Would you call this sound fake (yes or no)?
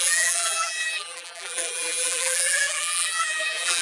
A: yes